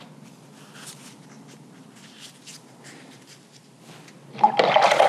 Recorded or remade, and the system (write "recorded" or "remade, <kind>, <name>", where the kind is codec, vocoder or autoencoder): recorded